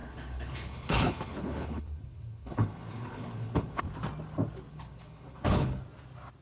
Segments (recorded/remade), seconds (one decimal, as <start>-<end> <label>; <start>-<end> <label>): 0.0-3.8 remade; 3.8-4.7 recorded; 4.7-5.8 remade; 5.8-6.4 recorded